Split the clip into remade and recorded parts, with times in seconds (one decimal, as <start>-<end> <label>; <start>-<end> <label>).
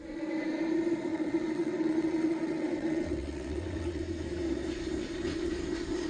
0.0-1.1 recorded; 1.1-4.0 remade; 4.0-6.1 recorded